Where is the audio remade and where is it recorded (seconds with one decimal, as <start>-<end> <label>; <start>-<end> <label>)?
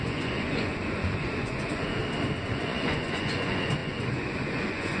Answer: 0.0-2.0 remade; 2.0-2.5 recorded; 2.5-5.0 remade